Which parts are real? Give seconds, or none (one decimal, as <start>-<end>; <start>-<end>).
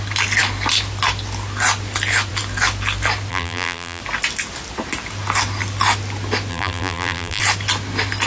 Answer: 0.0-3.3; 4.0-6.5; 7.4-8.3